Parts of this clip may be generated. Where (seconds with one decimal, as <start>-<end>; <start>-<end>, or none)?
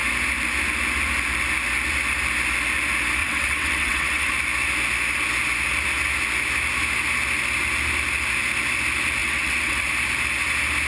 3.2-4.3; 9.2-9.9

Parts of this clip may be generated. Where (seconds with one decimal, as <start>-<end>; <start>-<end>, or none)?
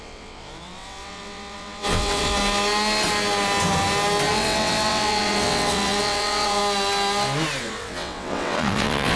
0.0-2.4; 4.3-6.6; 7.6-9.2